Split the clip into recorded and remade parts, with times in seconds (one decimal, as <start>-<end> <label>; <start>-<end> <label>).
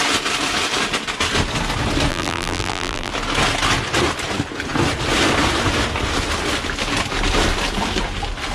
0.0-2.1 recorded; 2.1-3.1 remade; 3.1-8.5 recorded